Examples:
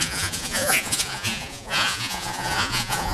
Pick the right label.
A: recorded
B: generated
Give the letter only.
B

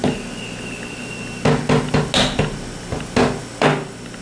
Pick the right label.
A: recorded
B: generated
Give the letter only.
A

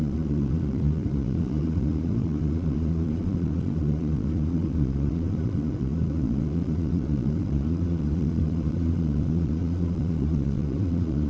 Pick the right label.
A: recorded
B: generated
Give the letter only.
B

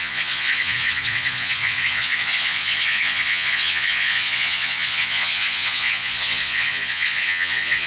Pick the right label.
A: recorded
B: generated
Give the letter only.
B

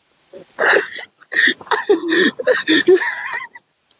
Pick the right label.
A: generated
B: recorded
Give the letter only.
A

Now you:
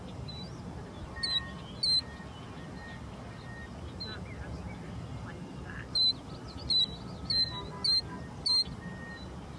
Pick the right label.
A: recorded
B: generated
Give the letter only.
A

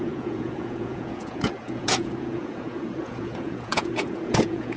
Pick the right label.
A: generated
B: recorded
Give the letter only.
A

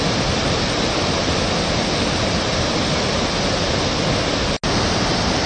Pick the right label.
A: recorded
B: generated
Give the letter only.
A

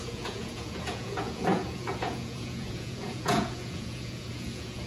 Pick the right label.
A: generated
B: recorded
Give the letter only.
A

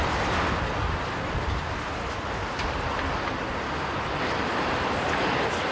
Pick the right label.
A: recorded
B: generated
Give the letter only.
A